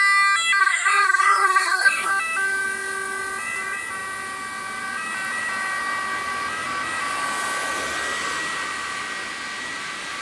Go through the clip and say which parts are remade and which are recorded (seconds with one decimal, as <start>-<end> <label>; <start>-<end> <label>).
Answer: 0.0-0.6 recorded; 0.6-2.1 remade; 2.1-10.2 recorded